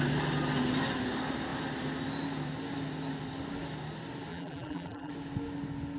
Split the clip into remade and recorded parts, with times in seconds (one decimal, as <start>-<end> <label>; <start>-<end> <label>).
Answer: 0.0-4.3 recorded; 4.3-5.1 remade; 5.1-6.0 recorded